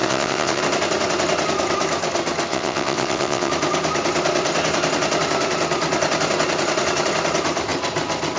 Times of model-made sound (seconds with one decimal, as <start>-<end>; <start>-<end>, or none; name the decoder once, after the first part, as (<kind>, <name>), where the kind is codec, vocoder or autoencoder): 0.0-0.6 (vocoder, WaveNeXt); 2.5-3.5